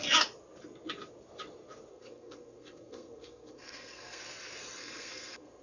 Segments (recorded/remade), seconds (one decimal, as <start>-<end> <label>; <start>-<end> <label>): 0.0-1.9 recorded; 1.9-4.2 remade; 4.2-4.8 recorded; 4.8-5.6 remade